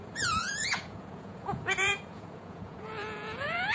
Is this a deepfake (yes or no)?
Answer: yes